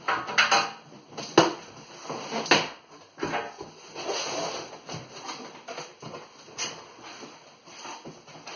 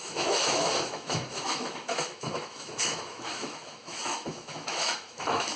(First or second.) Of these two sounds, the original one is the first